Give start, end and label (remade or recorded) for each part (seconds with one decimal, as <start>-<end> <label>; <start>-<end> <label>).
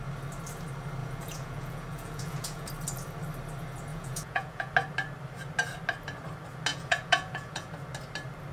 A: 0.0-1.0 recorded; 1.0-2.7 remade; 2.7-3.9 recorded; 3.9-4.7 remade; 4.7-6.7 recorded; 6.7-7.7 remade; 7.7-8.5 recorded